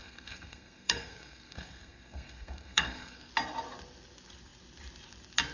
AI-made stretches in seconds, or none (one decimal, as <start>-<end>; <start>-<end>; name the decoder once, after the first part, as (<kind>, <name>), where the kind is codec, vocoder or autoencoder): 0.0-3.3 (codec, SNAC)